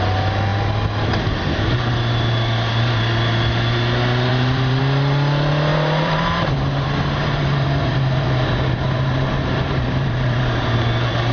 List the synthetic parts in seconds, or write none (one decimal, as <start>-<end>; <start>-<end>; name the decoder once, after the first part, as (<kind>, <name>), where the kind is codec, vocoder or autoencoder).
4.3-4.8 (vocoder, BigVGAN v2); 5.7-10.7